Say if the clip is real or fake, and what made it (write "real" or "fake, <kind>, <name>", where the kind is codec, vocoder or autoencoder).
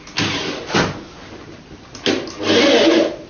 real